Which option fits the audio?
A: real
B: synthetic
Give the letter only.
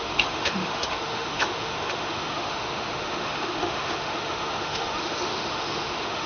B